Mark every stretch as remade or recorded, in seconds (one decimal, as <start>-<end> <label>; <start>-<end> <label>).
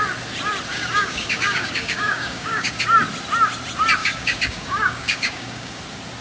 0.0-0.7 recorded; 0.7-2.8 remade; 2.8-4.0 recorded; 4.0-5.8 remade; 5.8-6.2 recorded